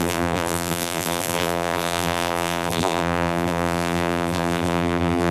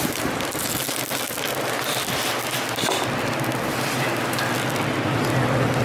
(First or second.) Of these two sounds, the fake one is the first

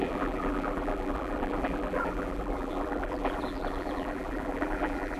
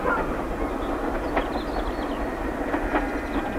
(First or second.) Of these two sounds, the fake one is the first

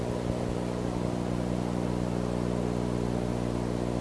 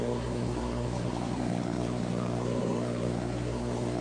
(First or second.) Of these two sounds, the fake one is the second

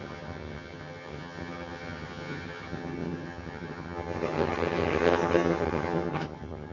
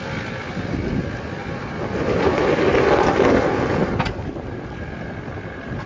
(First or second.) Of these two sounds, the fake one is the first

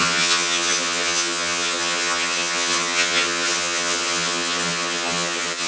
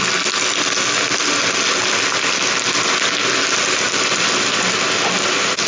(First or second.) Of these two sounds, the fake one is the first